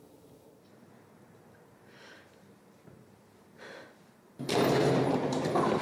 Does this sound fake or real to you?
fake